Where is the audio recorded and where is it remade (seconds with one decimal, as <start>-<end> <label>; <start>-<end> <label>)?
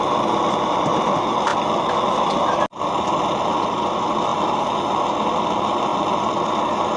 0.0-7.0 recorded